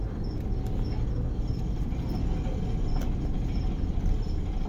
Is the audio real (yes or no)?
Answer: yes